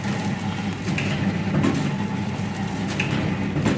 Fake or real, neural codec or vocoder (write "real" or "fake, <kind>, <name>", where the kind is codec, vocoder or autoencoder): real